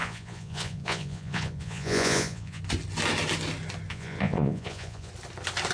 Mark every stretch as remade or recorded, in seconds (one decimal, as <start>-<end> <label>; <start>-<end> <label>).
0.0-2.6 remade; 2.6-3.9 recorded; 3.9-5.1 remade; 5.1-5.7 recorded